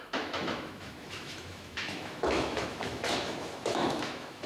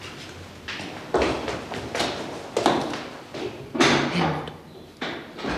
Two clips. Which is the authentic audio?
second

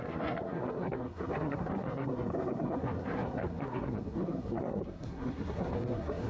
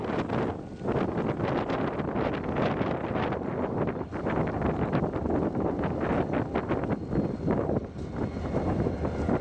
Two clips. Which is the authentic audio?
second